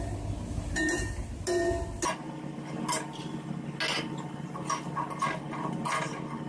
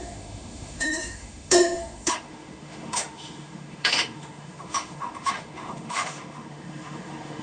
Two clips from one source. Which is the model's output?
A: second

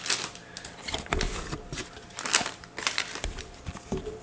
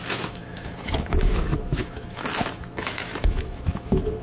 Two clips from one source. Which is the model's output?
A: second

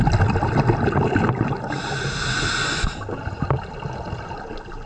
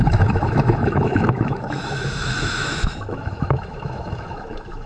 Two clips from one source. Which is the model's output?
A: second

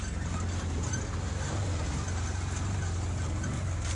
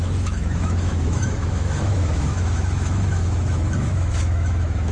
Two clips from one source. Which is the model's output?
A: second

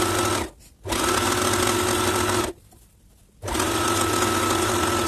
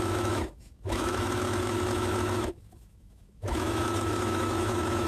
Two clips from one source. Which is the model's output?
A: second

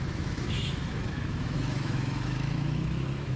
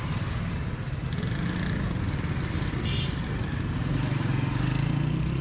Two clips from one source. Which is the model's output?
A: first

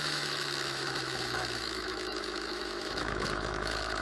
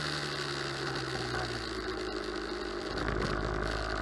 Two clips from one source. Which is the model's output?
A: first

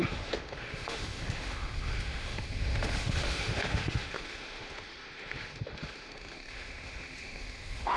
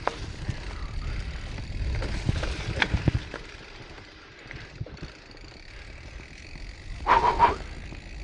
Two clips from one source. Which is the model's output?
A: first